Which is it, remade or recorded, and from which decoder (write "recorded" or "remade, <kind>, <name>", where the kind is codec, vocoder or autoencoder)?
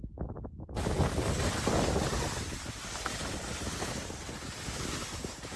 recorded